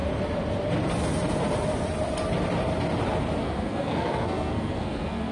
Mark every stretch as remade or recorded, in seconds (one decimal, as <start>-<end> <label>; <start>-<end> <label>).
0.0-3.4 recorded; 3.4-5.3 remade